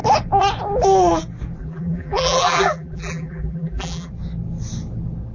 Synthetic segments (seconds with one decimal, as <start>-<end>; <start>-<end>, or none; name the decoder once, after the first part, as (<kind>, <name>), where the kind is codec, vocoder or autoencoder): 1.6-4.1 (vocoder, BigVGAN v2)

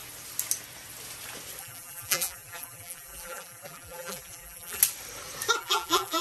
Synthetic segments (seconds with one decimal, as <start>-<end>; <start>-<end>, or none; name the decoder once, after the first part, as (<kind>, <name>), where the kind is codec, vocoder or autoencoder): 1.6-4.8 (vocoder, BigVGAN v2); 5.6-6.2

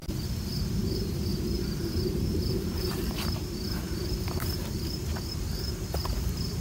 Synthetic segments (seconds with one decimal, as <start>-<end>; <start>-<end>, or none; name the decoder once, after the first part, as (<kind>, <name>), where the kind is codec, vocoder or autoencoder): 0.8-6.6 (vocoder, BigVGAN v2)